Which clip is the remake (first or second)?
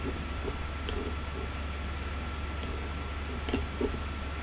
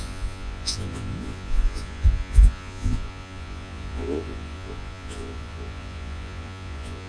second